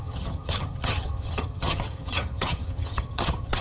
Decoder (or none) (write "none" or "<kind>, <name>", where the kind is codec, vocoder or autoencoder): vocoder, HiFi-GAN